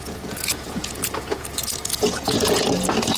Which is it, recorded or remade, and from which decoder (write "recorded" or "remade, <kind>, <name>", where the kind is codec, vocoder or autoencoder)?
remade, vocoder, Vocos